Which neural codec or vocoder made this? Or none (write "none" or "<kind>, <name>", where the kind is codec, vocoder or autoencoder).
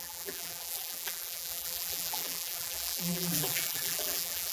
vocoder, BigVGAN v2